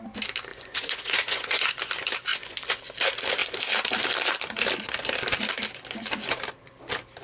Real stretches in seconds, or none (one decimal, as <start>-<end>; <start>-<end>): 0.0-0.5; 1.8-2.3; 2.8-7.2